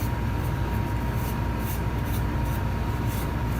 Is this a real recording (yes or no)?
no